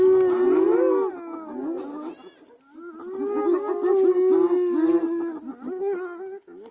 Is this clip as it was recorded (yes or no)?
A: yes